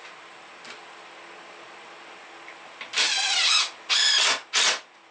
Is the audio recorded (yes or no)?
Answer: yes